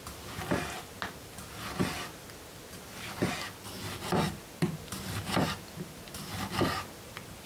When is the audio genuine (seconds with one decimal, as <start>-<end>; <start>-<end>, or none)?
0.0-7.5